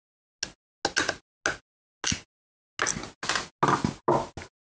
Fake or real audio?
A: real